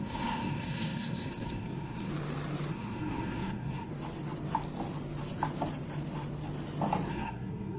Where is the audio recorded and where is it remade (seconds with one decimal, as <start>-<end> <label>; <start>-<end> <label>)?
0.0-2.1 remade; 2.1-2.7 recorded; 2.7-3.9 remade; 3.9-7.1 recorded; 7.1-7.8 remade